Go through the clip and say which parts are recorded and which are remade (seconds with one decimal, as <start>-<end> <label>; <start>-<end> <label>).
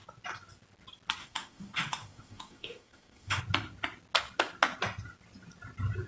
0.0-1.2 recorded; 1.2-3.4 remade; 3.4-6.1 recorded